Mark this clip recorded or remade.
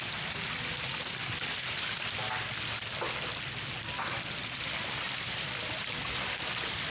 recorded